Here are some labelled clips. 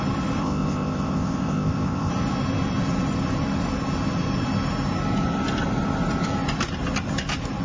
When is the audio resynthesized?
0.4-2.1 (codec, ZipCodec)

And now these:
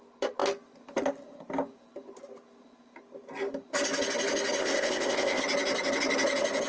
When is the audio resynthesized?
4.6-5.4 (codec, ZipCodec)